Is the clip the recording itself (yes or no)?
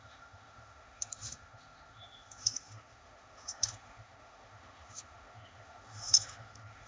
no